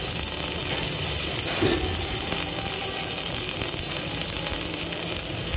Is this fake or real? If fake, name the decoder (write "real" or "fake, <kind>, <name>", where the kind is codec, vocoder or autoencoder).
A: real